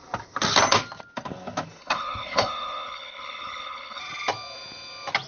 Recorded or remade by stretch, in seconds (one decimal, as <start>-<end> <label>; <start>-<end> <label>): 0.0-1.8 recorded; 1.8-4.0 remade; 4.0-5.3 recorded